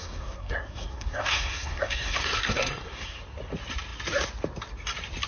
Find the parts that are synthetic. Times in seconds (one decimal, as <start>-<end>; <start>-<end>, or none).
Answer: 0.0-3.2